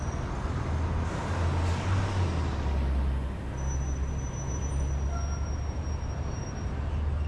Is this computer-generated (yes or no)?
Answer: no